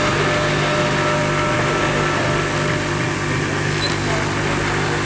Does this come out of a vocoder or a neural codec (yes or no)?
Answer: no